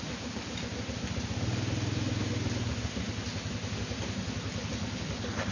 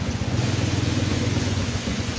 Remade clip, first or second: second